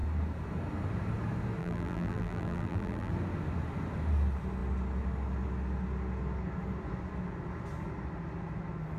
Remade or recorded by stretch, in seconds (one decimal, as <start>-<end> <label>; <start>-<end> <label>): 0.0-1.6 recorded; 1.6-3.1 remade; 3.1-9.0 recorded